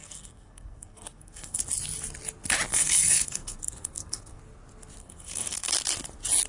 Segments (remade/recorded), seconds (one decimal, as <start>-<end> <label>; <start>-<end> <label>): 0.0-1.6 remade; 1.6-2.7 recorded; 2.7-4.4 remade; 4.4-5.0 recorded; 5.0-5.7 remade; 5.7-6.5 recorded